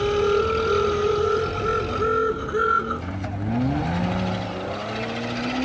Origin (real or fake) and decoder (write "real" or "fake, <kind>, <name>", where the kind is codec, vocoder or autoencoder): real